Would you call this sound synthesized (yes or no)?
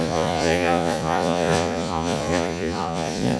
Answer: yes